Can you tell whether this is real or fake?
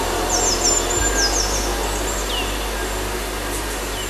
real